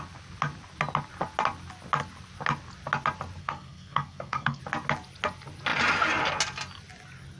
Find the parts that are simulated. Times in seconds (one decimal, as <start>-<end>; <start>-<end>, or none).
3.4-4.6